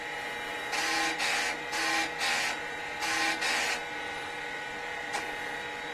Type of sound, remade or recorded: recorded